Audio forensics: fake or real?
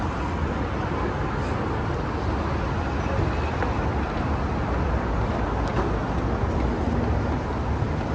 real